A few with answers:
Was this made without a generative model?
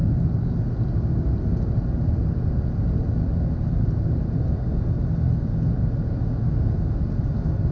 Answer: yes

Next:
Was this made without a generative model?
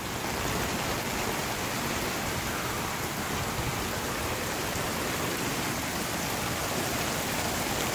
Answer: yes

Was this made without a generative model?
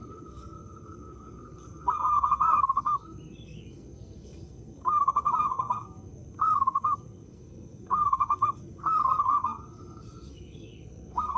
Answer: no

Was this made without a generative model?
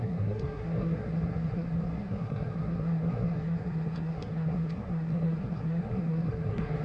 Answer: no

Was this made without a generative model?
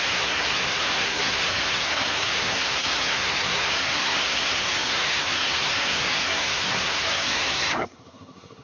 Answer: no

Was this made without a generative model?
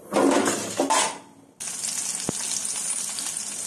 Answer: yes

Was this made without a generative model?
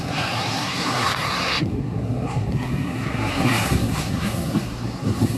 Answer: no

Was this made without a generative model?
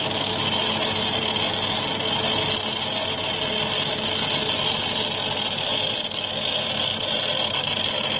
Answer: yes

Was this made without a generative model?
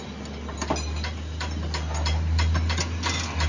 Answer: yes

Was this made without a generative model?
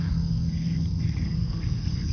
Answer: no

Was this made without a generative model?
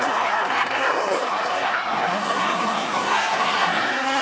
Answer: no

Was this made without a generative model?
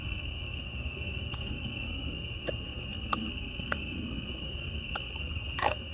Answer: no